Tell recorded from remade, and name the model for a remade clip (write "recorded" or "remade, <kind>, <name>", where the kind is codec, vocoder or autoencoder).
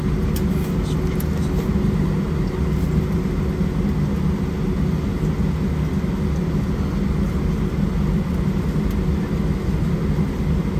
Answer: recorded